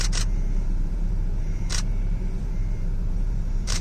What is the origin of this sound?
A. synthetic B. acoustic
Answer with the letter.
A